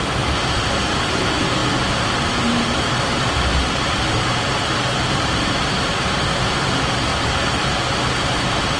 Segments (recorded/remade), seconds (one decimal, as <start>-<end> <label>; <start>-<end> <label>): 0.0-8.8 recorded